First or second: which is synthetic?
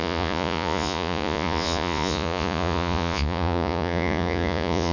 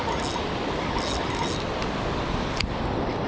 first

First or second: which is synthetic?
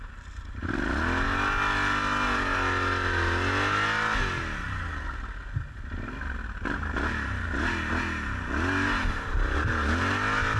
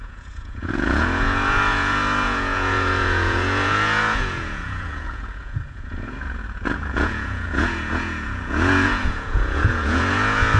second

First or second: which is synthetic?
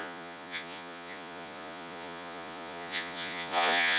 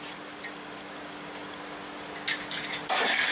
first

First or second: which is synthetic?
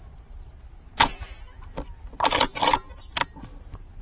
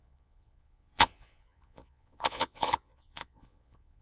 second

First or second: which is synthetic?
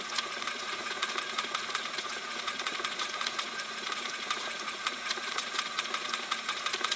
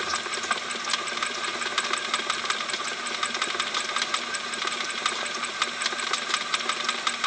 first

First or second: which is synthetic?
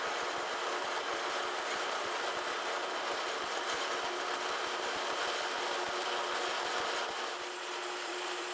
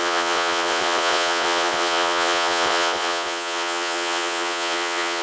second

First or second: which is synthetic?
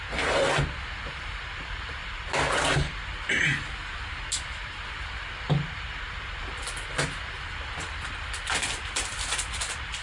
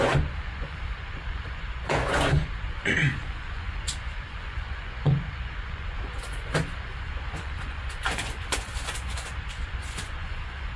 second